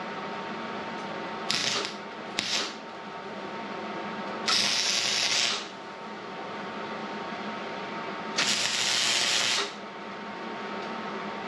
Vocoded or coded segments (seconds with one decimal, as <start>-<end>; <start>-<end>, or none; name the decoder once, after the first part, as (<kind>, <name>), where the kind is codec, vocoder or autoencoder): 7.0-7.9 (vocoder, BigVGAN v2)